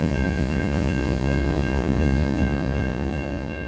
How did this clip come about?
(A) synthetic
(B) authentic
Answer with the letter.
A